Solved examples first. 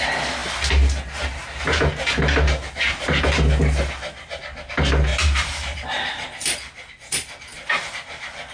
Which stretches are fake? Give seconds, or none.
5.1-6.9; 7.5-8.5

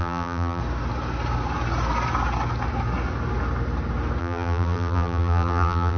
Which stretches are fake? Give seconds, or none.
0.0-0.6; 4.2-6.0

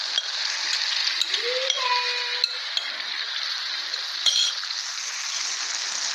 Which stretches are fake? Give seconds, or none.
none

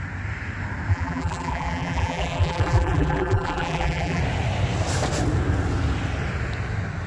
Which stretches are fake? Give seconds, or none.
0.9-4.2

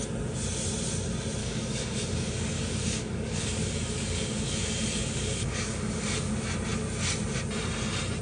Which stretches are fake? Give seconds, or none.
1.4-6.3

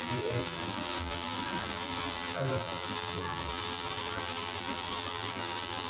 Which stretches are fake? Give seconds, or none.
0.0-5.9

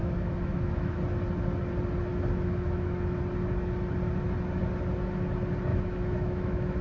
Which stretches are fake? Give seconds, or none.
0.0-1.0; 2.1-3.2; 5.7-6.8

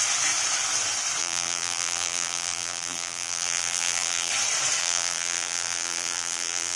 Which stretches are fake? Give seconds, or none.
1.2-4.3; 4.8-6.8